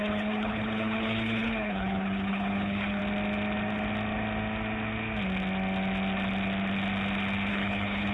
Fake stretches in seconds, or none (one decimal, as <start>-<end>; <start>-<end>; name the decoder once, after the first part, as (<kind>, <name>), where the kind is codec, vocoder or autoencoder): 0.0-3.0 (codec, HILCodec); 7.5-8.1

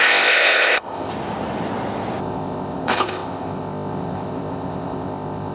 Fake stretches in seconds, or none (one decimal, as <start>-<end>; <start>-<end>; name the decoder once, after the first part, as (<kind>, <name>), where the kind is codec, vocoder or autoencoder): 0.0-1.1 (codec, ZipCodec); 2.2-5.5

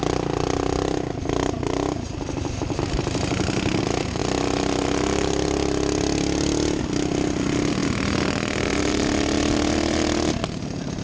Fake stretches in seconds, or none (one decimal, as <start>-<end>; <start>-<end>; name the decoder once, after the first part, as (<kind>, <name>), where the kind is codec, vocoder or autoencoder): none

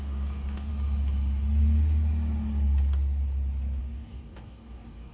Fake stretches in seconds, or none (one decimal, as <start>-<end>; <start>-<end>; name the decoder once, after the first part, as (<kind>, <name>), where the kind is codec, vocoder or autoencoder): 0.0-0.7 (codec, DAC); 3.8-5.1

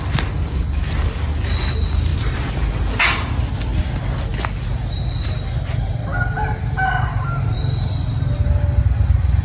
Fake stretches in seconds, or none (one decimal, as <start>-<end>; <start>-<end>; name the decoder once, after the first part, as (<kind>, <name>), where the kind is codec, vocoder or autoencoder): none

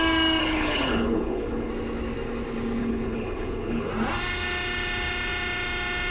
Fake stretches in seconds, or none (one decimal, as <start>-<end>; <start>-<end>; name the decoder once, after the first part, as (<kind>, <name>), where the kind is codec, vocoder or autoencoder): 0.4-1.7 (codec, HILCodec); 2.8-3.9

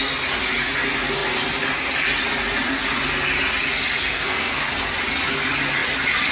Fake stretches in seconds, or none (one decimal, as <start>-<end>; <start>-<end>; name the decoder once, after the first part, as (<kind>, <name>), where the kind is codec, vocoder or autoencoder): 4.0-4.7 (codec, SNAC)